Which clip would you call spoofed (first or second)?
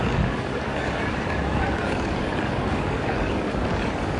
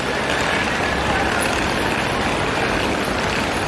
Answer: first